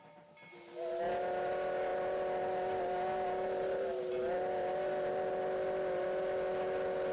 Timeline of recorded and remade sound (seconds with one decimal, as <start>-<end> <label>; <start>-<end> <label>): 0.0-7.1 recorded

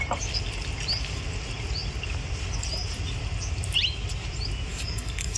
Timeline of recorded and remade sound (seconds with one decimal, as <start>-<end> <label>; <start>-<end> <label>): 0.0-4.7 recorded; 4.7-5.4 remade

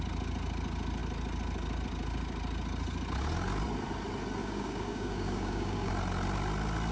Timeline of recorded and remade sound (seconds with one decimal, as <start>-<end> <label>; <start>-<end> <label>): 0.0-4.4 recorded; 4.4-5.9 remade; 5.9-6.9 recorded

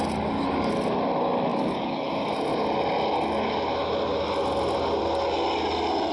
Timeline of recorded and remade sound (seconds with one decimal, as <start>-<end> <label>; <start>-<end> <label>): 0.0-1.5 recorded; 1.5-2.1 remade; 2.1-6.1 recorded

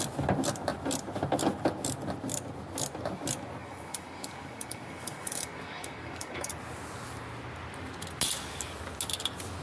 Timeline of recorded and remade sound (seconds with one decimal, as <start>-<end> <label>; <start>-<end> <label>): 0.0-3.6 recorded; 3.6-6.5 remade; 6.5-9.6 recorded

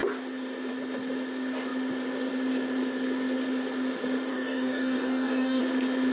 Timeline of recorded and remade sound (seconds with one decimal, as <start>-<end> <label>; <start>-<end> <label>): 0.0-4.3 recorded; 4.3-5.6 remade; 5.6-6.1 recorded

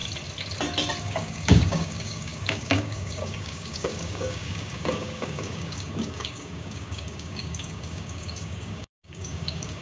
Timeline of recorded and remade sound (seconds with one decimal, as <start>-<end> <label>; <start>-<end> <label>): 0.0-1.0 recorded; 1.0-9.8 remade